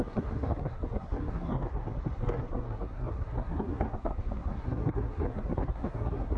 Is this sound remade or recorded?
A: remade